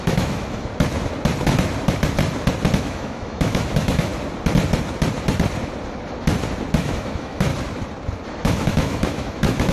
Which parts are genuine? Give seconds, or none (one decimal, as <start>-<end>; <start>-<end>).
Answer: 0.7-2.8; 4.1-6.8; 7.5-8.3